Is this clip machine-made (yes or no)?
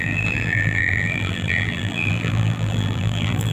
yes